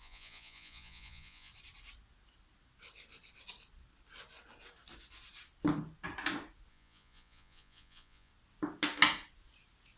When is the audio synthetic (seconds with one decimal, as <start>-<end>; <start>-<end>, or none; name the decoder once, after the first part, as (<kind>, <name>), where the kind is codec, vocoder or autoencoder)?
0.0-1.5 (vocoder, Vocos); 6.7-8.3